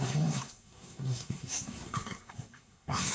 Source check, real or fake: fake